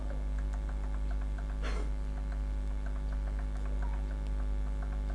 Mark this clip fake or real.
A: real